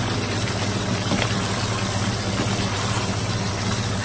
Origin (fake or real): real